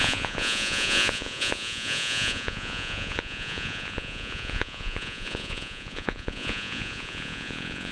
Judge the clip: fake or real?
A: fake